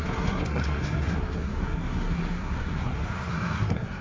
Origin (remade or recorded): remade